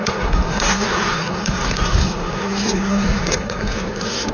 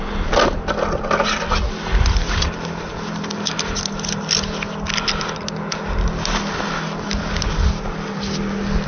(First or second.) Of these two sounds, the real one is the second